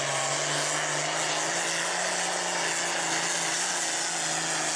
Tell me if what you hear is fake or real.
real